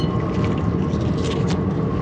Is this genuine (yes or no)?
yes